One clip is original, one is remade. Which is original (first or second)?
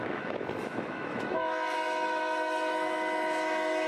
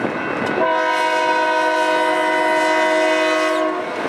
second